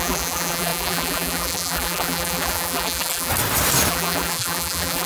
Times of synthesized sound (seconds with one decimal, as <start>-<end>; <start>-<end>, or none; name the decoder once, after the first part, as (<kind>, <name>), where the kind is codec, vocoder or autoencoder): 0.0-3.3 (vocoder, BigVGAN v2); 3.9-5.1